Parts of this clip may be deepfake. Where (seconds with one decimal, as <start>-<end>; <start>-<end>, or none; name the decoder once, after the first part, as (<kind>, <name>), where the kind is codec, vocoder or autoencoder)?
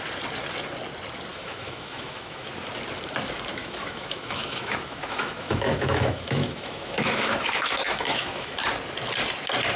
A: 1.3-2.5 (autoencoder, DAC-VAE); 3.6-8.6